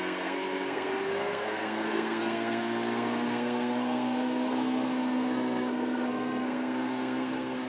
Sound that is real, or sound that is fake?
fake